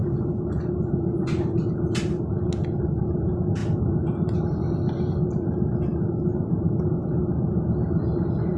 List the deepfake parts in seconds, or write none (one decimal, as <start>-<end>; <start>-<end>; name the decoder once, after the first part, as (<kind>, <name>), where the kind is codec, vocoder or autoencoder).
none